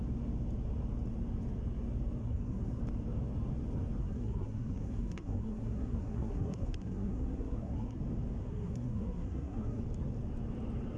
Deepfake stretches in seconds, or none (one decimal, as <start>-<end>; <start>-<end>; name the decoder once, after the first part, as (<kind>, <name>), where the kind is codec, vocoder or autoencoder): 2.2-2.8 (codec, SNAC); 4.0-8.0; 8.4-9.8